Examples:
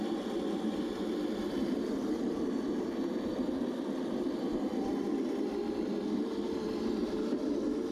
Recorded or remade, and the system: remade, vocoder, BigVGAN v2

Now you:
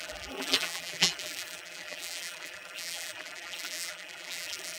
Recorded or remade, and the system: remade, vocoder, BigVGAN v2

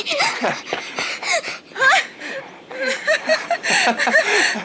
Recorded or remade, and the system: remade, vocoder, BigVGAN v2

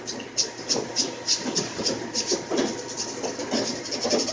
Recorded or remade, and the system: remade, vocoder, BigVGAN v2